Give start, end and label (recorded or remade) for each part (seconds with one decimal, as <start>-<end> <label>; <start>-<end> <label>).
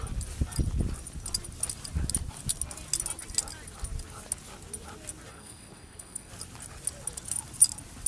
0.0-5.3 recorded; 5.3-6.3 remade; 6.3-8.1 recorded